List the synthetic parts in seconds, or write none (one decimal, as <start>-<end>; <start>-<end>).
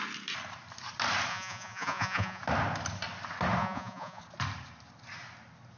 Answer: 1.3-2.4; 3.6-4.2